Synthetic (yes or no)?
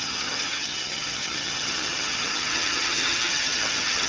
yes